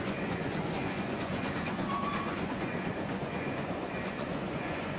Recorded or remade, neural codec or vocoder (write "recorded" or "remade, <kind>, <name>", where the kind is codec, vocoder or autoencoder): remade, vocoder, Vocos